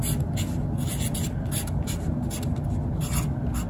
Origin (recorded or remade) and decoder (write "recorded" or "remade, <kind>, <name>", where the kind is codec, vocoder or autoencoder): recorded